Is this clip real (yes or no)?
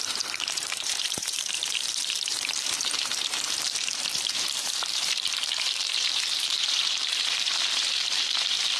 no